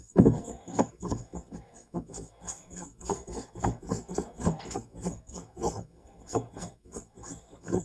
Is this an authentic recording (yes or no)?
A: no